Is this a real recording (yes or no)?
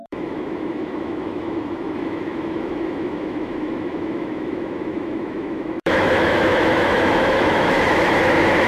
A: no